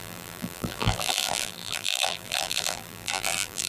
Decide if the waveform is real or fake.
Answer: fake